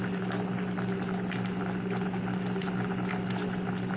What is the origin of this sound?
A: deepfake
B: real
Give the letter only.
B